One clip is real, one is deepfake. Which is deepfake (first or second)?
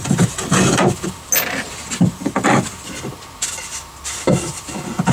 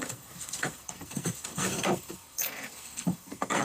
second